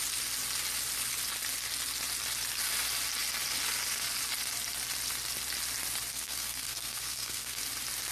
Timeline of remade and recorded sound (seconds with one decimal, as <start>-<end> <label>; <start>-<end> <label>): 0.0-6.1 recorded; 6.1-7.6 remade; 7.6-8.1 recorded